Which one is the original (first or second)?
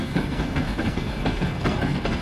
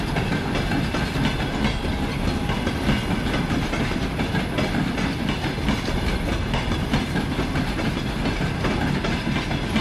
second